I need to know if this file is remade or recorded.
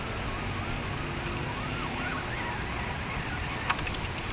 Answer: recorded